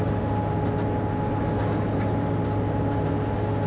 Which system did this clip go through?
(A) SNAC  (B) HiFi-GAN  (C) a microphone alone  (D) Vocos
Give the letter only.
C